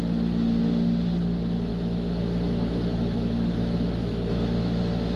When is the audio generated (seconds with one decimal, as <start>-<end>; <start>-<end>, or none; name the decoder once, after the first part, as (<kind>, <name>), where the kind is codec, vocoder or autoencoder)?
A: 1.7-4.8 (autoencoder, DAC-VAE)